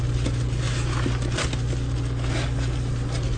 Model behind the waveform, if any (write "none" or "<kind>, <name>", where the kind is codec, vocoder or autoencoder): none